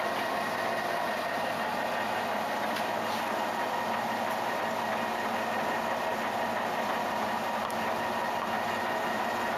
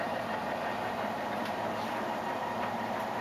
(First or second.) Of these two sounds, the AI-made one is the second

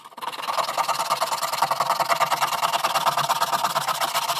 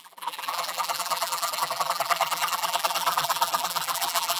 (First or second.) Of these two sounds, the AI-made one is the second